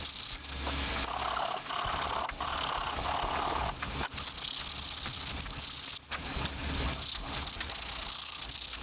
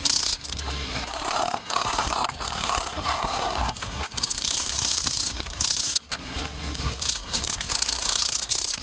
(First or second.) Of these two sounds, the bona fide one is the first